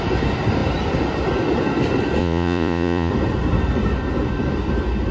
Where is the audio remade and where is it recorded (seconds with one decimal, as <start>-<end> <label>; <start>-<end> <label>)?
0.0-2.2 recorded; 2.2-3.1 remade; 3.1-5.1 recorded